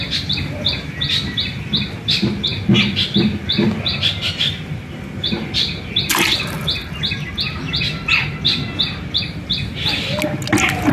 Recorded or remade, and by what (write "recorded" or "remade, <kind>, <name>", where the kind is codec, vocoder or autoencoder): recorded